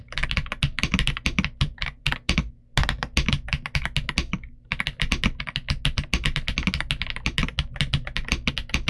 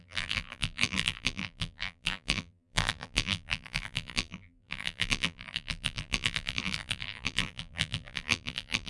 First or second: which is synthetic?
second